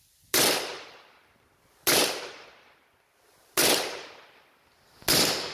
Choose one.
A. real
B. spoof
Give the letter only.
A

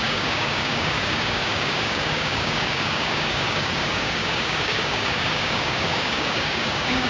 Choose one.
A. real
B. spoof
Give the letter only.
B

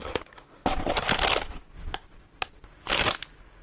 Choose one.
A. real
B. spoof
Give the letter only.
A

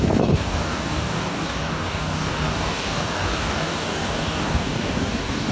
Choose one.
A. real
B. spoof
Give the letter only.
B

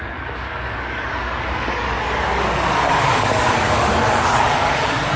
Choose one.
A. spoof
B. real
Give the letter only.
A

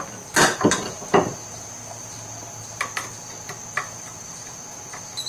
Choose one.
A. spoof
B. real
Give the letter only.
B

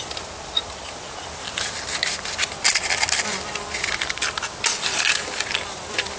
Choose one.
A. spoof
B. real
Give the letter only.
B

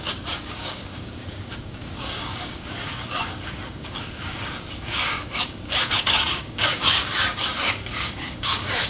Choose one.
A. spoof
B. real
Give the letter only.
A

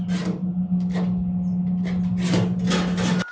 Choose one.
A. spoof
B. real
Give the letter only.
B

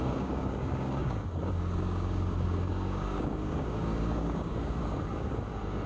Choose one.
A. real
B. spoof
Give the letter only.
B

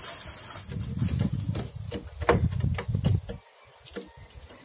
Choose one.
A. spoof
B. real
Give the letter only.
B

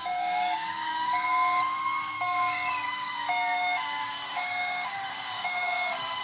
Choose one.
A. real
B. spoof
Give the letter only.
B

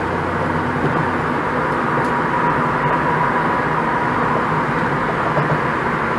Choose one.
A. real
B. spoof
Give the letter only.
A